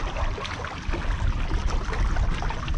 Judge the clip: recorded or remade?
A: recorded